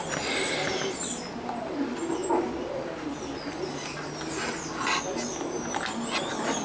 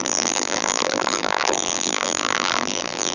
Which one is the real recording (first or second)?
first